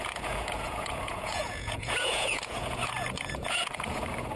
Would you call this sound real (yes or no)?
no